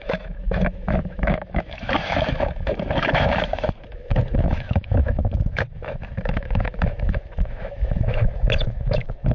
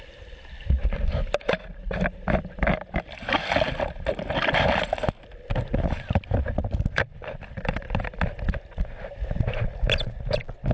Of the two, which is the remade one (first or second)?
first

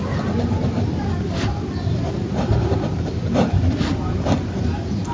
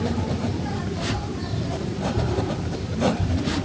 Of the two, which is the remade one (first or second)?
second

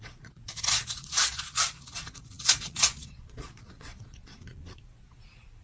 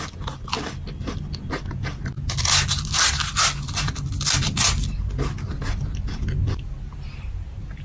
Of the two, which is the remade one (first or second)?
first